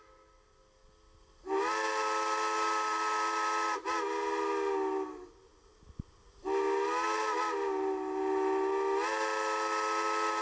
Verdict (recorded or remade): recorded